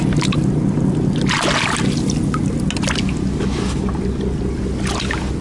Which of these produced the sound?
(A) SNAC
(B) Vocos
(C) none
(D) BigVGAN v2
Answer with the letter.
C